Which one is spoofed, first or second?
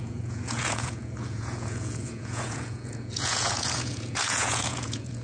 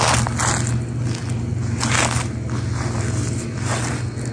first